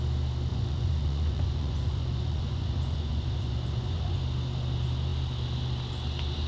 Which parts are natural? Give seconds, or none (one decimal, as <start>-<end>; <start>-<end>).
0.0-0.5; 4.2-6.5

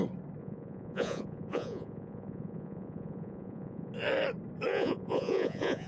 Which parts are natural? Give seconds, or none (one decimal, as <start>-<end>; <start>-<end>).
0.0-0.4; 3.9-4.7

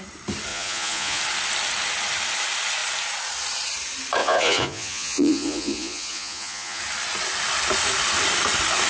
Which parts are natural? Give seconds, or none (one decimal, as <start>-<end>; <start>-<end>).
0.0-0.5; 1.2-4.2; 6.8-8.9

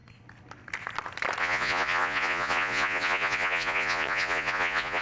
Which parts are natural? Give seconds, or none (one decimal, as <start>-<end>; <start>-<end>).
0.0-1.4

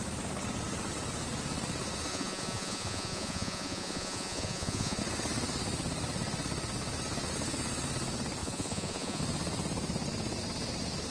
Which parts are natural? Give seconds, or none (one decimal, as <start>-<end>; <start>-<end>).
0.0-2.1; 5.0-8.4; 9.2-11.1

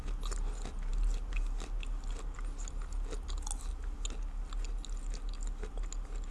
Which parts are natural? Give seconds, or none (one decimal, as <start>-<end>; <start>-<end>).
0.0-6.3